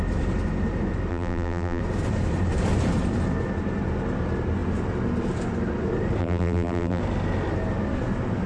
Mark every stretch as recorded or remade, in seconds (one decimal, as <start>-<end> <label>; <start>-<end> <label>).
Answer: 0.0-1.1 recorded; 1.1-1.8 remade; 1.8-6.2 recorded; 6.2-7.0 remade; 7.0-8.5 recorded